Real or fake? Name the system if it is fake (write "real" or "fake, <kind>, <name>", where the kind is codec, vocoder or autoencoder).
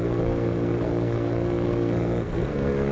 fake, codec, SNAC